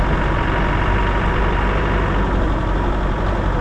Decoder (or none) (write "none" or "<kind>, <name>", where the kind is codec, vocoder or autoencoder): none